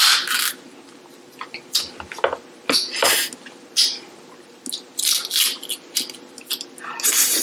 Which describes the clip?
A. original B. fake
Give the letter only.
A